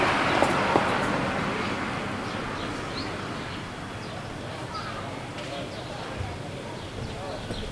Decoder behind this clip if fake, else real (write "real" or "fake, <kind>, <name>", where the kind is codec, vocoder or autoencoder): real